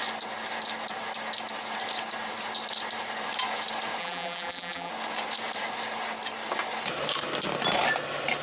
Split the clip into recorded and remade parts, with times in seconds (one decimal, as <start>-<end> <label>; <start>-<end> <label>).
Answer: 0.0-4.0 recorded; 4.0-4.9 remade; 4.9-8.4 recorded